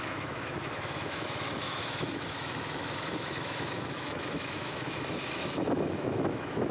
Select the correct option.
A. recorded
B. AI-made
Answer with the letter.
B